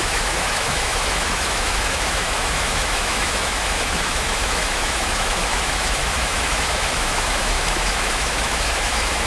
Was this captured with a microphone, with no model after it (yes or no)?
no